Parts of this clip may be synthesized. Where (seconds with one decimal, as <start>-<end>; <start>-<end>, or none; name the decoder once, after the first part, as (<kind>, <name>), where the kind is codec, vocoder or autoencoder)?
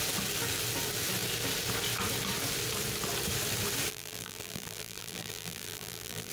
3.9-6.3 (vocoder, BigVGAN v2)